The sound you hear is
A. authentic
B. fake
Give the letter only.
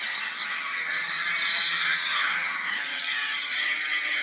B